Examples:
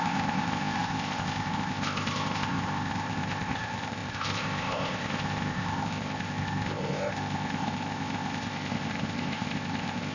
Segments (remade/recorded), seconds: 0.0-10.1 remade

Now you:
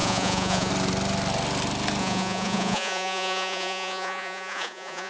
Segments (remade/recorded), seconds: 0.0-0.7 remade; 0.7-2.0 recorded; 2.0-5.1 remade

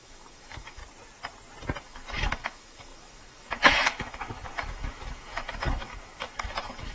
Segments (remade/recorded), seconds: 0.0-0.8 remade; 0.8-1.8 recorded; 1.8-6.9 remade